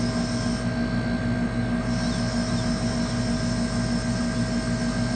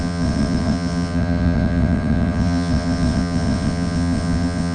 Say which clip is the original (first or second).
first